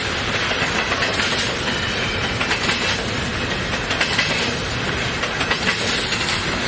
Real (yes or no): yes